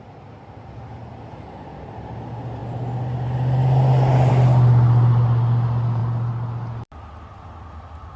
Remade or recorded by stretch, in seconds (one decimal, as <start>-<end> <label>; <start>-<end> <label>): 0.0-8.2 recorded